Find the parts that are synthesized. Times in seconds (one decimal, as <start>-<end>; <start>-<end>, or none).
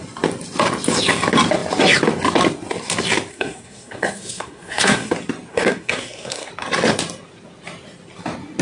3.3-5.1; 5.5-6.5